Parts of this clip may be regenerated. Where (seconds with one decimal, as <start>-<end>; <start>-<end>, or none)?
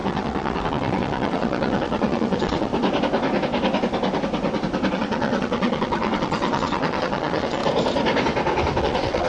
0.0-2.7; 4.9-7.6; 8.8-9.3